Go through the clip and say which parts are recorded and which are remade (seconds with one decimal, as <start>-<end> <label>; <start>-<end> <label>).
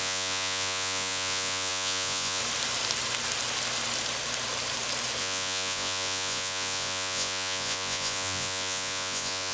0.0-2.4 remade; 2.4-5.2 recorded; 5.2-9.5 remade